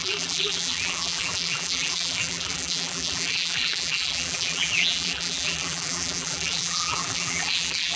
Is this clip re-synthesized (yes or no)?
yes